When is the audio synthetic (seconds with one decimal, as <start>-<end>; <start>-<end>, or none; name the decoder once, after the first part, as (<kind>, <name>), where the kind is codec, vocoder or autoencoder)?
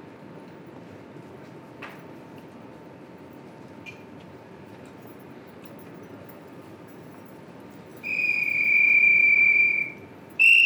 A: none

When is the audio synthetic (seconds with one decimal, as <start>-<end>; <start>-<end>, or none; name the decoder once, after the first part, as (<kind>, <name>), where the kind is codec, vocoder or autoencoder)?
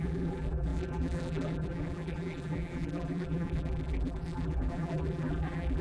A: 0.0-5.8 (vocoder, BigVGAN v2)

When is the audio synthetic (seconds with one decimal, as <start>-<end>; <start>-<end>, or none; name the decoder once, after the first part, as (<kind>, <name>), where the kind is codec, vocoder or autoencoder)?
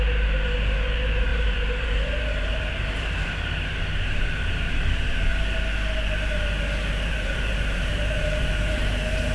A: 0.0-5.3 (vocoder, BigVGAN v2); 7.1-9.3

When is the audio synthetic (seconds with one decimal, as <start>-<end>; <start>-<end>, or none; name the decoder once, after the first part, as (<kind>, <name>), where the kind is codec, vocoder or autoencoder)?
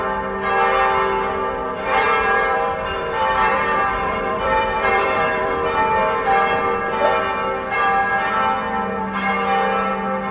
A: 1.6-5.5 (vocoder, BigVGAN v2)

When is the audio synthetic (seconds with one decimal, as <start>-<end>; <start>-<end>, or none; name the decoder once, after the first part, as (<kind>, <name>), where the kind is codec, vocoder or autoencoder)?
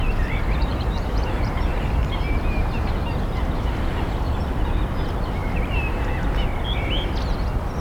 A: 0.7-4.6 (vocoder, BigVGAN v2); 5.4-6.1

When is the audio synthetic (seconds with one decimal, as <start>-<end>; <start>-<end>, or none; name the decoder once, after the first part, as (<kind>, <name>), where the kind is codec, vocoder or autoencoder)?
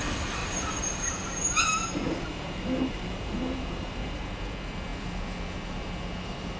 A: 0.4-4.2 (vocoder, BigVGAN v2)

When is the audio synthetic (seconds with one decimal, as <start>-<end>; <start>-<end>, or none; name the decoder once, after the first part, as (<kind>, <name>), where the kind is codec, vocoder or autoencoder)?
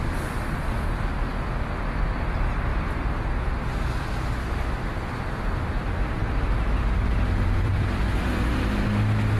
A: 6.2-8.6 (vocoder, BigVGAN v2)